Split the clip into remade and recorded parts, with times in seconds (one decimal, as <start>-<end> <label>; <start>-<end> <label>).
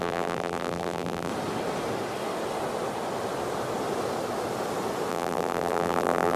0.0-1.3 remade; 1.3-5.1 recorded; 5.1-6.4 remade